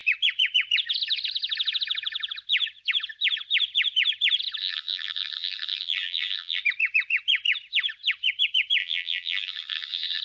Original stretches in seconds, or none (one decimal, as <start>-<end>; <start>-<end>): 0.0-4.6; 6.6-8.8